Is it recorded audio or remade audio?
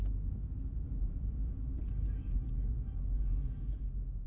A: remade